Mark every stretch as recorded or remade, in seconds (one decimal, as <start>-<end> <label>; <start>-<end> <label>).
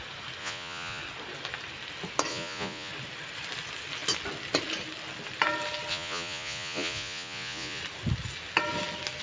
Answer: 0.0-0.4 recorded; 0.4-1.0 remade; 1.0-2.3 recorded; 2.3-2.9 remade; 2.9-5.9 recorded; 5.9-7.8 remade; 7.8-9.2 recorded